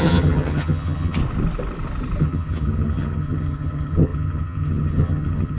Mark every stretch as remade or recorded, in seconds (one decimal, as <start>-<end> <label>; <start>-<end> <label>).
0.0-1.2 remade; 1.2-2.2 recorded; 2.2-5.6 remade